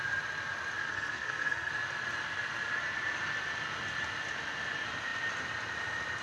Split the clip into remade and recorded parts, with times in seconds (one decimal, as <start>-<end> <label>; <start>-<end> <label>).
0.0-0.8 recorded; 0.8-1.7 remade; 1.7-6.2 recorded